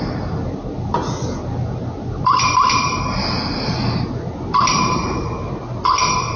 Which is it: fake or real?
real